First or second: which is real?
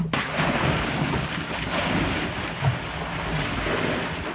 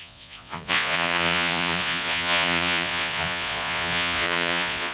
first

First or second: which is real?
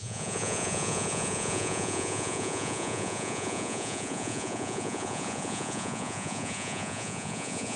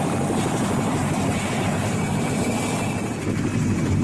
second